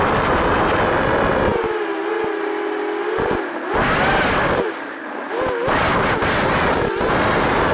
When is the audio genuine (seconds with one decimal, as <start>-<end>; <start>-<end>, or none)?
0.0-7.7

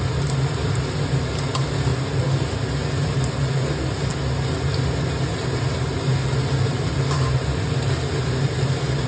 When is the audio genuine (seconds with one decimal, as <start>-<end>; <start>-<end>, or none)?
0.0-9.1

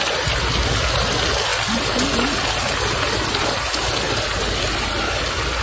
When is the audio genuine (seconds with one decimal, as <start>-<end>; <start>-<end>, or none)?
0.0-5.6

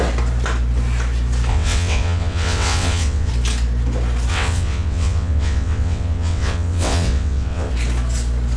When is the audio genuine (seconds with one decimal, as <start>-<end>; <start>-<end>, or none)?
0.0-1.5; 3.3-4.3; 7.7-8.6